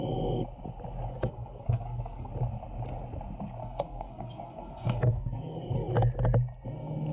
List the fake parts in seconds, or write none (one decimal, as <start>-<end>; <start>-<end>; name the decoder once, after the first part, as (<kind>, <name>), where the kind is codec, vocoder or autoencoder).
1.1-2.3 (codec, SNAC); 3.6-5.6